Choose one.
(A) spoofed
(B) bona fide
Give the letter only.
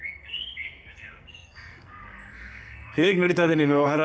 A